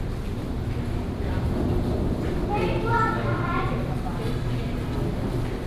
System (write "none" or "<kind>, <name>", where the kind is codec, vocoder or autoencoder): none